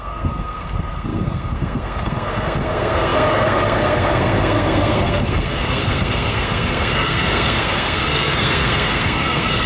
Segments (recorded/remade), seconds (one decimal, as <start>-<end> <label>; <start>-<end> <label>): 0.0-9.7 remade